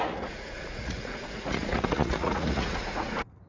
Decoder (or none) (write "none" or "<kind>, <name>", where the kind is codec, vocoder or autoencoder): vocoder, Vocos